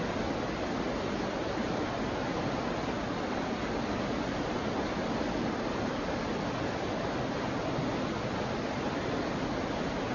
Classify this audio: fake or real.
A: real